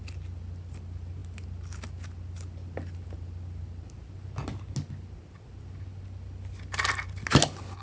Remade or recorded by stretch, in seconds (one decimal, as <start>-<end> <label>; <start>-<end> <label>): 0.0-7.8 recorded